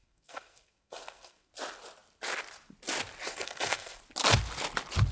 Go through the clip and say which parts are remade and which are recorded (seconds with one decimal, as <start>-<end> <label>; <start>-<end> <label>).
0.0-1.5 remade; 1.5-3.3 recorded; 3.3-4.0 remade; 4.0-5.1 recorded